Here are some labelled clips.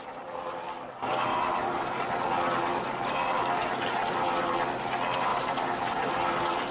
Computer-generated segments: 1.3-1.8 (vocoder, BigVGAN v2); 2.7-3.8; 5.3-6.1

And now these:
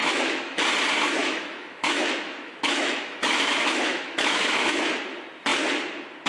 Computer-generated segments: 0.0-0.6 (autoencoder, DAC-VAE); 1.2-4.8

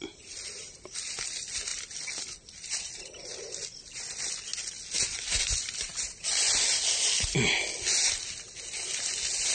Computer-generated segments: none

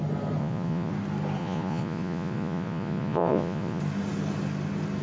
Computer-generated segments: 0.4-0.9 (vocoder, Vocos); 1.4-3.8

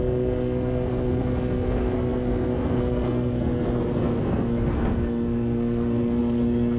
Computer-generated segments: 0.0-6.8 (codec, SNAC)

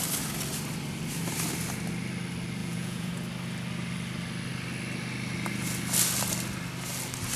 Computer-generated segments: 2.6-3.1 (vocoder, Vocos)

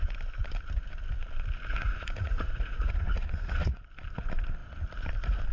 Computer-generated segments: 1.7-3.8 (vocoder, Vocos)